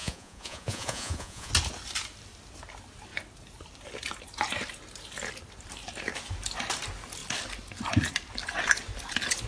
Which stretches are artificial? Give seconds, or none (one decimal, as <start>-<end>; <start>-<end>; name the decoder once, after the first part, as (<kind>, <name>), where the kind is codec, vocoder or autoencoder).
0.0-1.5 (vocoder, Vocos)